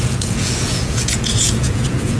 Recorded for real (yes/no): no